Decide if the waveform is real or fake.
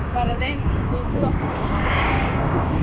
fake